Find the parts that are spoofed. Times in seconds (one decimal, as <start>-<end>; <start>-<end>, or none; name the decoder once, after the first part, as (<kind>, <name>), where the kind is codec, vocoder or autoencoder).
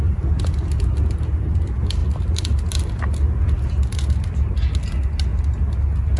none